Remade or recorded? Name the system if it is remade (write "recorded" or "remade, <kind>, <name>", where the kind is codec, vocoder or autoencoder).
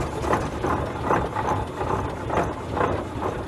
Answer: recorded